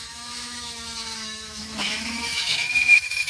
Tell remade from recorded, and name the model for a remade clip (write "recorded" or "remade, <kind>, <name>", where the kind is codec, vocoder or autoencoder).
remade, autoencoder, DAC-VAE